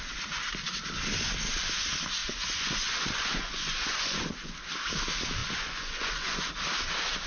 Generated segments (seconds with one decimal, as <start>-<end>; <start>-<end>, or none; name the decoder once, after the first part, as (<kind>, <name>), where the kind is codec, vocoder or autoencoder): 2.2-4.6 (vocoder, Vocos); 5.4-6.5